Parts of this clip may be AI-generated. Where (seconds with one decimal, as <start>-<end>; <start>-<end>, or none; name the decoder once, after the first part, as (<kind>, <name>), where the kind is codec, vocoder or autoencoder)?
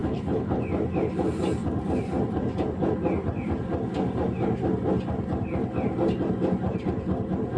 0.0-0.6 (codec, HILCodec)